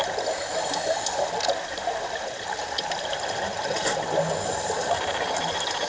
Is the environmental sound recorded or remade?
recorded